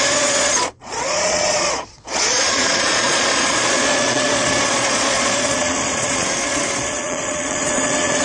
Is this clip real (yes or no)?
no